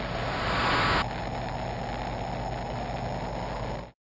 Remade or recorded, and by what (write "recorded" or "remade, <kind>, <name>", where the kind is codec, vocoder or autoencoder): recorded